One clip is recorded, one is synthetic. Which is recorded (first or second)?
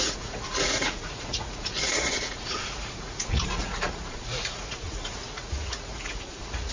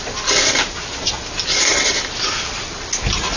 second